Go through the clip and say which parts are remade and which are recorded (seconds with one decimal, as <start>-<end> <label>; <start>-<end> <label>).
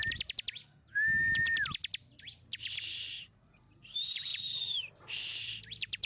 0.0-3.2 recorded; 3.2-6.1 remade